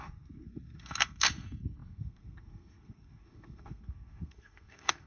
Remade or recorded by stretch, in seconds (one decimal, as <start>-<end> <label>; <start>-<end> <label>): 0.0-5.1 remade